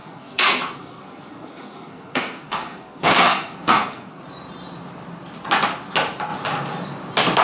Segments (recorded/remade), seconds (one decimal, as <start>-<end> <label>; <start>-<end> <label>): 0.0-4.2 remade; 4.2-7.4 recorded